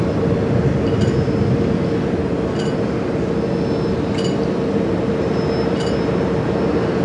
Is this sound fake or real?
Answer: real